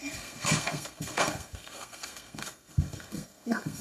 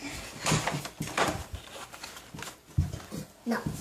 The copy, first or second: first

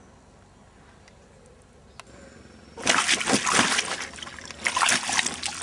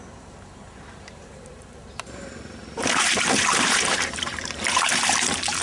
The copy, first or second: second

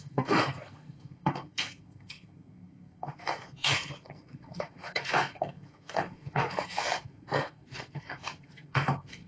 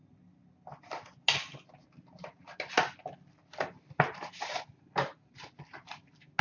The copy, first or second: first